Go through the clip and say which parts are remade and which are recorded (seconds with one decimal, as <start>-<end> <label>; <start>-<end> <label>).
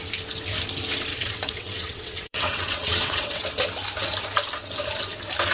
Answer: 0.0-1.1 recorded; 1.1-3.5 remade; 3.5-5.5 recorded